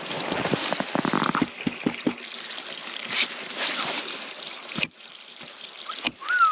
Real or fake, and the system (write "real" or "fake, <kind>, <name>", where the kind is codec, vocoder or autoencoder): real